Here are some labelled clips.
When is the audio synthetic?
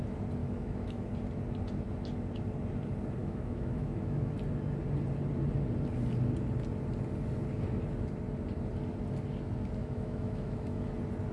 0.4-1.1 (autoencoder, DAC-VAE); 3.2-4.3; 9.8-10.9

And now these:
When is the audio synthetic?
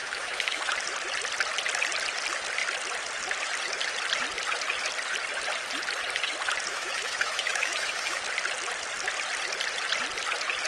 0.0-0.6 (autoencoder, DAC-VAE); 6.7-8.2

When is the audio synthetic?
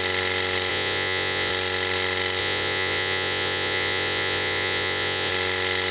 0.7-1.5 (vocoder, Vocos); 2.4-5.3